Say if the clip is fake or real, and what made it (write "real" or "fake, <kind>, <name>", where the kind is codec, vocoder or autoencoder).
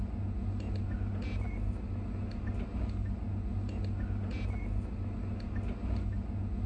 real